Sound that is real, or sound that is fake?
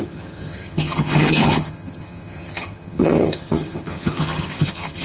fake